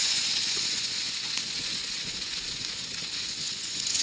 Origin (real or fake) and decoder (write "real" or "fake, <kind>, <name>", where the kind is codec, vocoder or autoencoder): fake, vocoder, Vocos